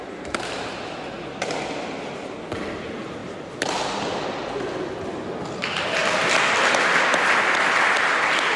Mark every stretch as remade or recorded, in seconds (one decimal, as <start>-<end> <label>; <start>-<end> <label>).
0.0-3.2 recorded; 3.2-4.8 remade; 4.8-6.0 recorded; 6.0-6.7 remade; 6.7-8.6 recorded